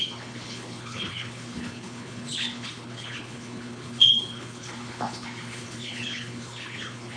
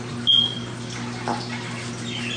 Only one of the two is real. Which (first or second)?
second